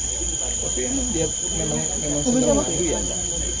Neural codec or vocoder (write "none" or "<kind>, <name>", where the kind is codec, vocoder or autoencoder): none